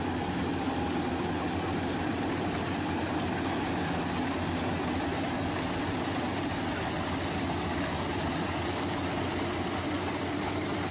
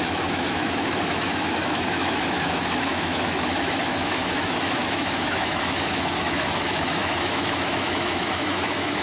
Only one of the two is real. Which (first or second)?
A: first